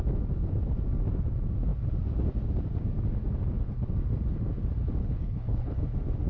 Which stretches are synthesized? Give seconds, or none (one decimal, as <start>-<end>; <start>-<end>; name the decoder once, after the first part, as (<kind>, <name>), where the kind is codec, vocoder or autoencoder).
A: 5.0-5.8 (codec, HILCodec)